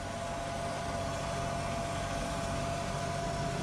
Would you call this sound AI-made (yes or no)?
no